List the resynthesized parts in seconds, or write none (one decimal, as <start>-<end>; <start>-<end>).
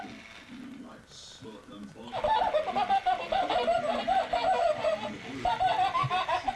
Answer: none